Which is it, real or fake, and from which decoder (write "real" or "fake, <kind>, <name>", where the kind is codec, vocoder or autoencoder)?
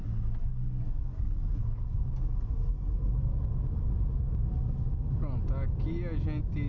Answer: real